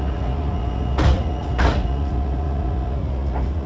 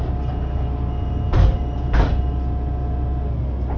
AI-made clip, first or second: first